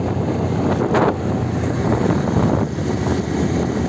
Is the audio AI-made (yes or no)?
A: no